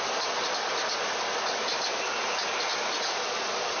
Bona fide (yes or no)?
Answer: yes